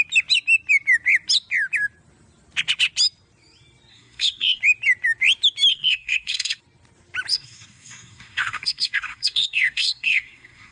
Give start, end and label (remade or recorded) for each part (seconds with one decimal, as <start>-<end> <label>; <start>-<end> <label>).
0.0-3.9 recorded; 3.9-4.6 remade; 4.6-5.7 recorded; 5.7-6.6 remade; 6.6-7.3 recorded; 7.3-10.7 remade

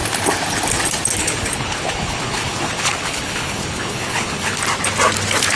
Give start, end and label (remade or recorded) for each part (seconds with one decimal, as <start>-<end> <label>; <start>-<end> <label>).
0.0-1.2 recorded; 1.2-4.6 remade; 4.6-5.6 recorded

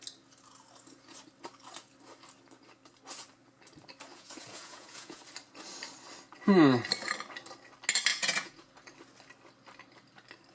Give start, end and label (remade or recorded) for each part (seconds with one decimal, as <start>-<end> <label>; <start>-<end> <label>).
0.0-4.1 recorded; 4.1-5.2 remade; 5.2-8.1 recorded; 8.1-8.7 remade; 8.7-10.5 recorded

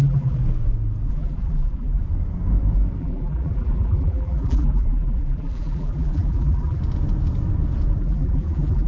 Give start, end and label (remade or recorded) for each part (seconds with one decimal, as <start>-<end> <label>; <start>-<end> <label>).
0.0-0.4 remade; 0.4-1.1 recorded; 1.1-2.0 remade; 2.0-3.0 recorded; 3.0-6.8 remade; 6.8-8.0 recorded; 8.0-8.9 remade

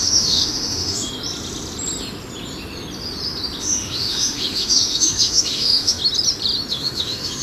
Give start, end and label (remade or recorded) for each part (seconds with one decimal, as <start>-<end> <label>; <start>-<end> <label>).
0.0-1.1 remade; 1.1-3.6 recorded; 3.6-6.0 remade; 6.0-6.7 recorded; 6.7-7.4 remade

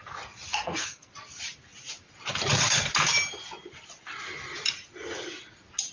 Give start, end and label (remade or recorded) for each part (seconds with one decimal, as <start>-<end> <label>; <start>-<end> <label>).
0.0-0.5 recorded; 0.5-1.1 remade; 1.1-5.9 recorded